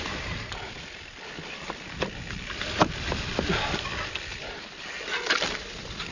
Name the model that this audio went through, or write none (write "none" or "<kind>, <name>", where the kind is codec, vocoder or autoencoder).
vocoder, BigVGAN v2